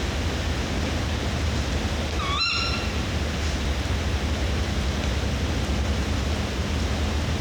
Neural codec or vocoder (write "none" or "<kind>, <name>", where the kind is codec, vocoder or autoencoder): none